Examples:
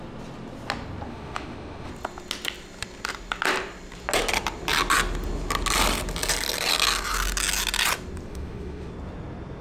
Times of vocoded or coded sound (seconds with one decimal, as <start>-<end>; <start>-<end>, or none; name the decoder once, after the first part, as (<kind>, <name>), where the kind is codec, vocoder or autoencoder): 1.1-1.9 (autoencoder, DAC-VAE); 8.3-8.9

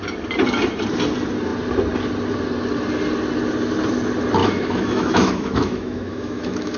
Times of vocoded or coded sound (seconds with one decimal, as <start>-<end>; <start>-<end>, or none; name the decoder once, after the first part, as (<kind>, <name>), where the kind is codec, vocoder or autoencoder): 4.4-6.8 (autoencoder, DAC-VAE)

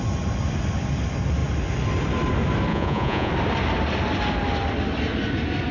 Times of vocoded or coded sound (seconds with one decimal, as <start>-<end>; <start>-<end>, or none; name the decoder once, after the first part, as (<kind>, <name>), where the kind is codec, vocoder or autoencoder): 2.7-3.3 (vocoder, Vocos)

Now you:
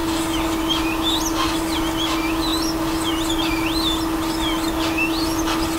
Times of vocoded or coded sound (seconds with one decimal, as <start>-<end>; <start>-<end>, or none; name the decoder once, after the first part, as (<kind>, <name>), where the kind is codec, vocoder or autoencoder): none

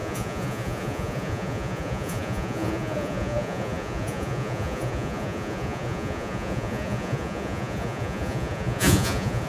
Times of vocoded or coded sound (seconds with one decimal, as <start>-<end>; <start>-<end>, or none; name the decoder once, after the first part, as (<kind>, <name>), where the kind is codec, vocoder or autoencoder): 0.0-9.5 (vocoder, Vocos)